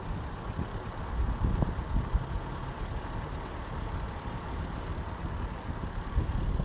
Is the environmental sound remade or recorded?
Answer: recorded